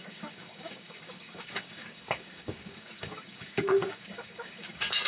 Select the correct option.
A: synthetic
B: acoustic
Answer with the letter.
A